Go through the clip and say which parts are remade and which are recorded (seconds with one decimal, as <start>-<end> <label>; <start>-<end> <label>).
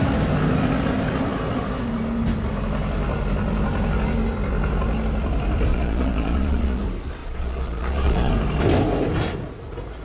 0.0-5.7 recorded; 5.7-6.8 remade; 6.8-7.2 recorded; 7.2-8.3 remade; 8.3-10.0 recorded